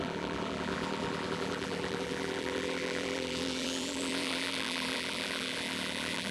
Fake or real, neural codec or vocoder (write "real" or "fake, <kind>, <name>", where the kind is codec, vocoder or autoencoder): fake, vocoder, BigVGAN v2